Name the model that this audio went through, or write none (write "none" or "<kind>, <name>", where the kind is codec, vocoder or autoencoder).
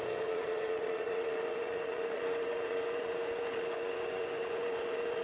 vocoder, Vocos